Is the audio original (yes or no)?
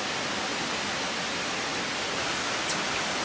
yes